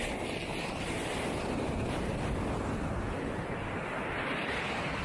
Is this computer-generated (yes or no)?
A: no